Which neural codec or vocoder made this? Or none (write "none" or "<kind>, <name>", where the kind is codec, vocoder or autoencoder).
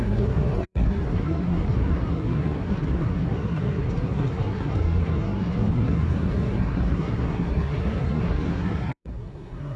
codec, SNAC